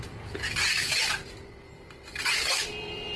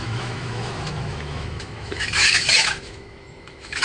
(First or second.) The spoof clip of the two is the second